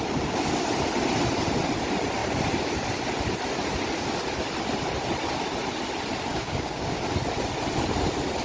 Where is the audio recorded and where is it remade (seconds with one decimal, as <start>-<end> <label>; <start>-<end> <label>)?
0.0-6.3 recorded; 6.3-7.0 remade; 7.0-8.4 recorded